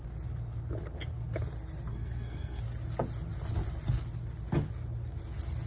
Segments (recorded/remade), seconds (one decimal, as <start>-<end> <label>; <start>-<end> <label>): 0.0-1.9 recorded; 1.9-2.6 remade; 2.6-5.7 recorded